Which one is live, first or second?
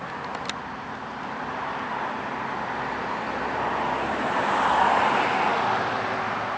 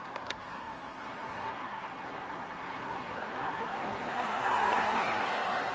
first